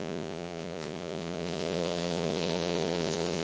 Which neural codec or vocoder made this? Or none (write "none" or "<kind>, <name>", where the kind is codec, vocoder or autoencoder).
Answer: vocoder, Vocos